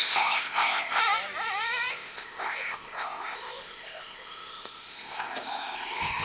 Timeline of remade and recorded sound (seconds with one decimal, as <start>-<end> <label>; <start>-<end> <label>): 0.0-1.0 remade; 1.0-1.9 recorded; 1.9-6.2 remade

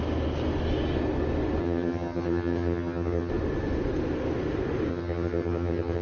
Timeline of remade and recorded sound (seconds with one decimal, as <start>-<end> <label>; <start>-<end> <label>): 0.0-1.6 recorded; 1.6-3.3 remade; 3.3-4.9 recorded; 4.9-6.0 remade

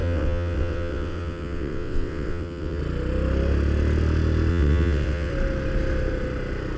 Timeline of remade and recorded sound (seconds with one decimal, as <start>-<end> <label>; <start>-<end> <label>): 0.0-2.8 remade; 2.8-4.5 recorded; 4.5-5.3 remade; 5.3-6.8 recorded

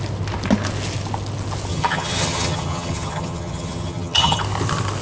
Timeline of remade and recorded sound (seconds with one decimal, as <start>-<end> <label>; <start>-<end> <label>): 0.0-1.7 recorded; 1.7-4.4 remade; 4.4-5.0 recorded

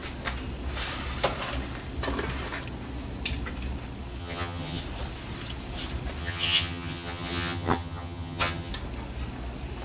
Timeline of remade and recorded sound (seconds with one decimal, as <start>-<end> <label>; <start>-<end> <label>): 0.0-4.2 recorded; 4.2-4.8 remade; 4.8-6.2 recorded; 6.2-8.7 remade; 8.7-9.8 recorded

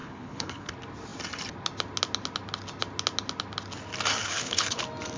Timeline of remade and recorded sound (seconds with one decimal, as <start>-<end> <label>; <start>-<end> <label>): 0.0-0.7 remade; 0.7-4.2 recorded; 4.2-4.8 remade; 4.8-5.2 recorded

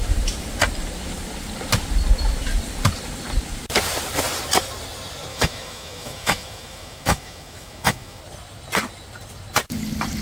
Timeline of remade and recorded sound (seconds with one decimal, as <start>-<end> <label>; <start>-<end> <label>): 0.0-5.3 recorded; 5.3-8.2 remade; 8.2-10.2 recorded